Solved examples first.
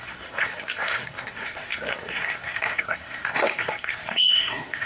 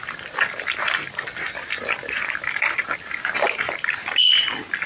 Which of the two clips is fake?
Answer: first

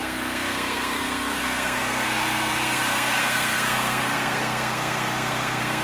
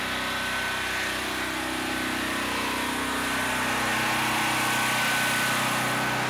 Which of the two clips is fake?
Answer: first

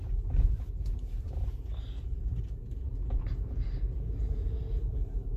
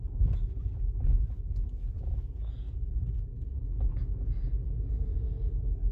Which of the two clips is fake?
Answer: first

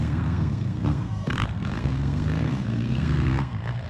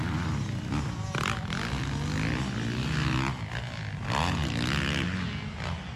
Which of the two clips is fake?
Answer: first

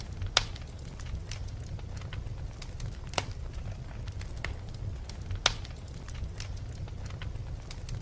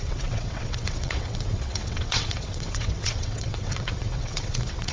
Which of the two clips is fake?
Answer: second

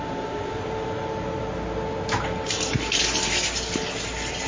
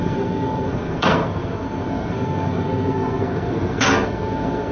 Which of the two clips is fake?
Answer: second